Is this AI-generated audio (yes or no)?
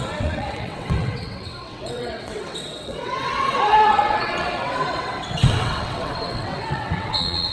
yes